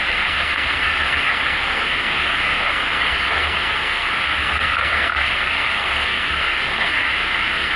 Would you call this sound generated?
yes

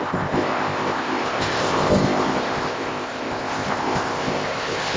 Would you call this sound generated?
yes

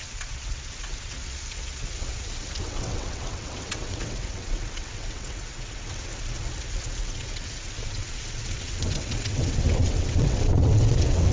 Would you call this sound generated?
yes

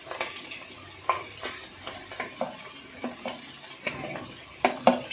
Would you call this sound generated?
no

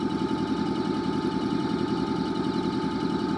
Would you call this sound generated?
no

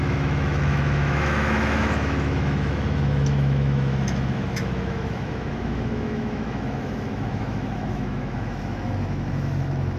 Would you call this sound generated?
yes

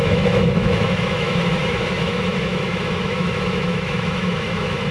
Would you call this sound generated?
yes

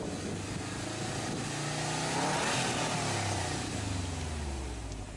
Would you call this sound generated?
no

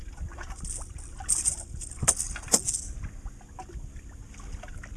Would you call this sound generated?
no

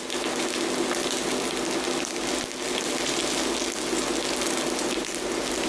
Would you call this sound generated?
no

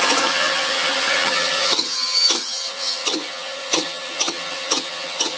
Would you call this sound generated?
yes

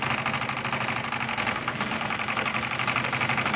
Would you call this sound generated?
no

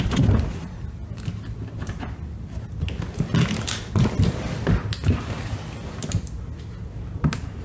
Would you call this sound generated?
no